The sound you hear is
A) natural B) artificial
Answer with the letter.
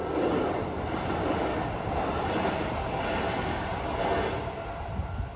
A